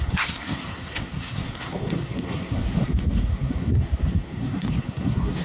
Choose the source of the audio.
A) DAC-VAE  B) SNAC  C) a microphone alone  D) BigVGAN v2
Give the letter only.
B